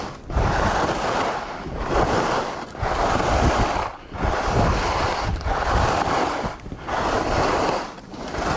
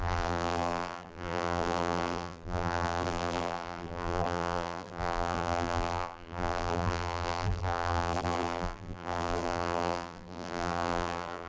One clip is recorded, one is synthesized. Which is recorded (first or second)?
first